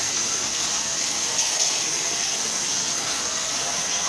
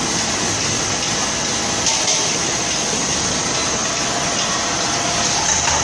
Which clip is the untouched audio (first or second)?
second